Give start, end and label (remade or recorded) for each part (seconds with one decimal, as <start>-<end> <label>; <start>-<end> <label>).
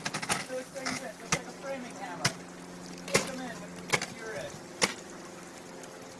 0.0-6.2 recorded